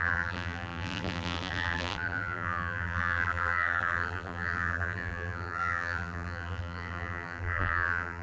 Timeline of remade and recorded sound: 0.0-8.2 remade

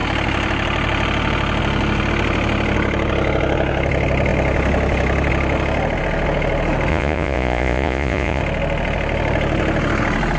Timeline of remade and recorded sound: 0.0-6.9 recorded; 6.9-8.4 remade; 8.4-10.4 recorded

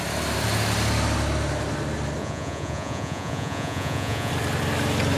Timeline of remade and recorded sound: 0.0-2.2 recorded; 2.2-4.3 remade; 4.3-5.2 recorded

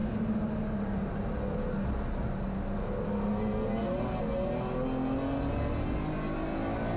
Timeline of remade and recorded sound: 0.0-7.0 recorded

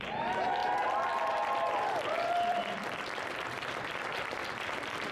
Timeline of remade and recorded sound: 0.0-0.6 remade; 0.6-1.7 recorded; 1.7-5.1 remade

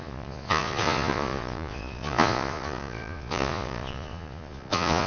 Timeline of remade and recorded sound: 0.0-5.1 remade

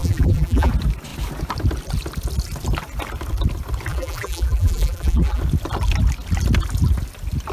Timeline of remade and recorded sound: 0.0-0.7 remade; 0.7-3.9 recorded; 3.9-5.4 remade; 5.4-7.5 recorded

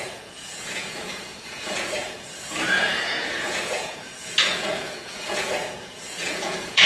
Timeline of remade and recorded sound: 0.0-6.9 remade